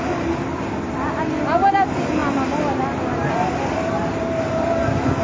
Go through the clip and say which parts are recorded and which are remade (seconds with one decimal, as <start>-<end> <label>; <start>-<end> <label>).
0.0-5.2 recorded